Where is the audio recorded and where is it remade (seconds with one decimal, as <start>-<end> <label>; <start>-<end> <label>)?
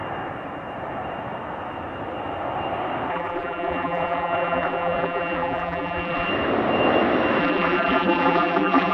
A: 0.0-3.1 recorded; 3.1-6.3 remade; 6.3-7.4 recorded; 7.4-8.9 remade